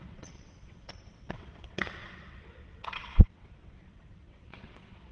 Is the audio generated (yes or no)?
yes